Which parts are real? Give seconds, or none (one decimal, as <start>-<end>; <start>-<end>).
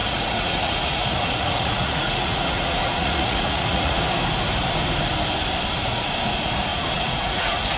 4.0-6.7